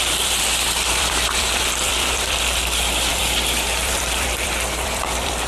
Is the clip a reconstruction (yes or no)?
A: yes